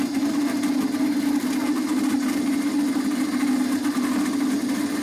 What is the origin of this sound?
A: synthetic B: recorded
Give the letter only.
B